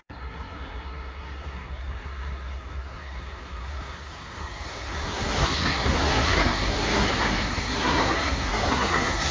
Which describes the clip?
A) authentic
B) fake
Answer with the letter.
B